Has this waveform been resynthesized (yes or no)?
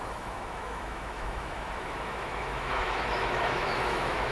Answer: yes